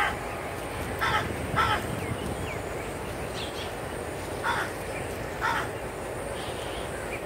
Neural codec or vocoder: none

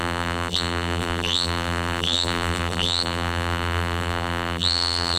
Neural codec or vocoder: vocoder, BigVGAN v2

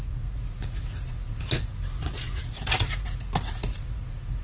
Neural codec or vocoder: vocoder, Vocos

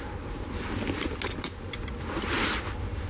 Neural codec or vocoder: none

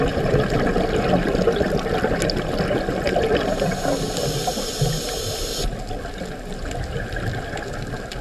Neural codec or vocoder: none